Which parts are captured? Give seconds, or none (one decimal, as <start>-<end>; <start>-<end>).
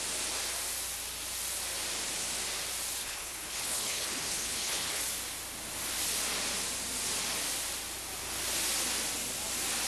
0.0-3.0; 5.0-9.9